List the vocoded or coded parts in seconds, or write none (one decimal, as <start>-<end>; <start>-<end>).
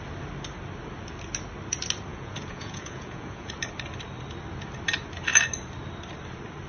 2.1-3.5